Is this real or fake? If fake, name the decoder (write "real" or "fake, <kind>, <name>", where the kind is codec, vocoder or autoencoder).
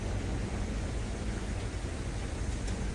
fake, vocoder, Vocos